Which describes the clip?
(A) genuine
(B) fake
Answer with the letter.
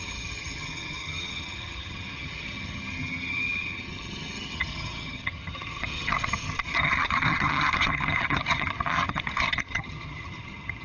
B